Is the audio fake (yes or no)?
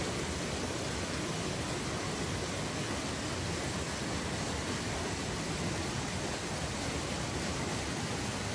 no